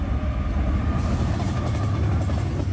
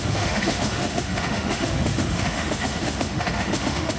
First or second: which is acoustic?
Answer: first